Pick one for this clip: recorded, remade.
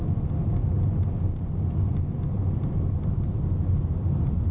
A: recorded